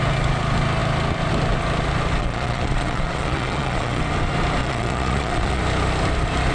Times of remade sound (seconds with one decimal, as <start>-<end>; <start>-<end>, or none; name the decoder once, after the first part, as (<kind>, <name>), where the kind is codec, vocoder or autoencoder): 2.2-4.0 (vocoder, Vocos); 4.6-5.6